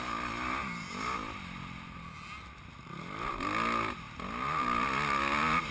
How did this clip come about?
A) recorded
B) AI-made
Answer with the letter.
A